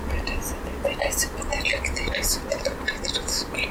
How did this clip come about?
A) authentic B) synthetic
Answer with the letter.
A